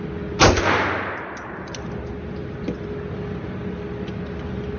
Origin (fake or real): real